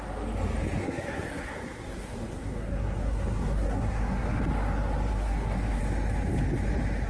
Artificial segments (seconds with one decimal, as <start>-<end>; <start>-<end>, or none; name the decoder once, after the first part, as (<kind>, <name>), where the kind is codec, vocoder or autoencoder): 0.8-4.4 (codec, SNAC); 5.1-5.8

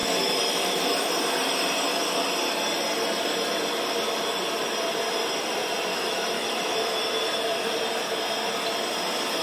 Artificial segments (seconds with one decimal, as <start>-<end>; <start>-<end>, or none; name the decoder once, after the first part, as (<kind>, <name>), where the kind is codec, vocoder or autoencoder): 0.0-1.1 (autoencoder, DAC-VAE); 5.9-7.0